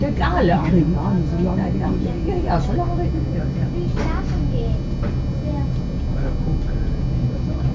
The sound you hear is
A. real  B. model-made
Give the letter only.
A